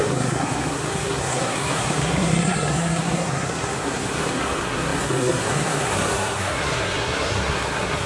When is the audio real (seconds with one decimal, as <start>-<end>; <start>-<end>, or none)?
none

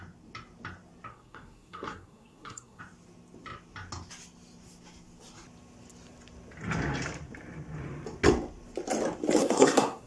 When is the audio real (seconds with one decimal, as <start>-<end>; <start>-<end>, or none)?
0.0-1.1; 2.8-9.4

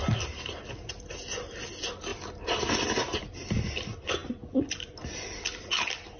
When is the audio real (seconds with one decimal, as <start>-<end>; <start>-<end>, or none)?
0.0-6.2

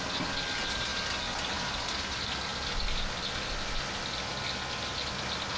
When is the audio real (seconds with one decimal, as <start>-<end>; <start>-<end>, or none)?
0.0-5.6

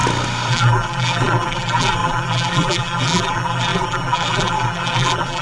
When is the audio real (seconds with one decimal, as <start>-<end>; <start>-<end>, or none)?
0.0-0.5

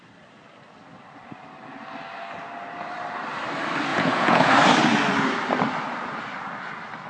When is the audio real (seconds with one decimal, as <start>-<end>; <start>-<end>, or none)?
0.0-3.9; 4.5-7.1

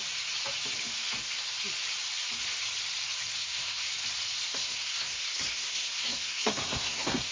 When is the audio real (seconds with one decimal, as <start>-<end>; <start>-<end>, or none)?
0.0-3.4; 3.9-4.5

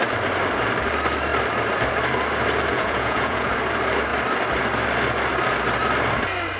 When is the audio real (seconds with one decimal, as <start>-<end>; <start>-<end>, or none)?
0.0-2.7; 3.5-6.6